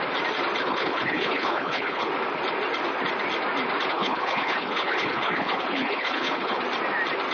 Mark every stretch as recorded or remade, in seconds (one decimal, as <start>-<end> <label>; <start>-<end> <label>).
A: 0.0-0.6 recorded; 0.6-2.1 remade; 2.1-3.9 recorded; 3.9-6.6 remade; 6.6-7.3 recorded